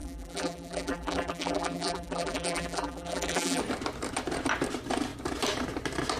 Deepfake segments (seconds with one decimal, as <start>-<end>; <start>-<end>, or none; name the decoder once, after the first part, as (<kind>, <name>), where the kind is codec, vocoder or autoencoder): 0.0-3.6 (vocoder, BigVGAN v2)